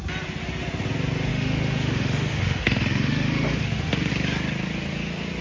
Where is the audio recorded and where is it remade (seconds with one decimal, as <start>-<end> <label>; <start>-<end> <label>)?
0.0-1.3 recorded; 1.3-4.1 remade; 4.1-5.4 recorded